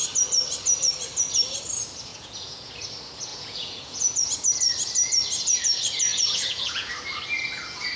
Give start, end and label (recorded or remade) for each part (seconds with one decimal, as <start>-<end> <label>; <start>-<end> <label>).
0.0-2.1 recorded; 2.1-2.7 remade; 2.7-3.3 recorded; 3.3-4.3 remade; 4.3-6.1 recorded; 6.1-6.9 remade; 6.9-8.0 recorded